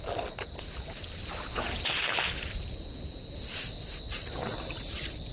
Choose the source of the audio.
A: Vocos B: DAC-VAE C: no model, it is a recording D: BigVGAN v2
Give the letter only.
C